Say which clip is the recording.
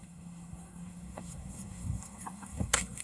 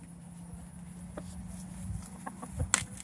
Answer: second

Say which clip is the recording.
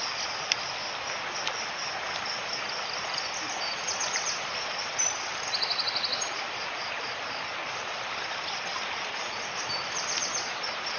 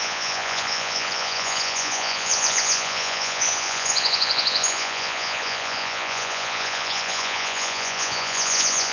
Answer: first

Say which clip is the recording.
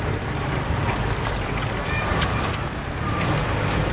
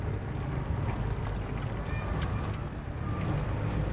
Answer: second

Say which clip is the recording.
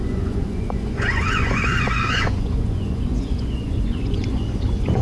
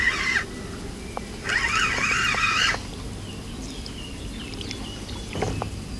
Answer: second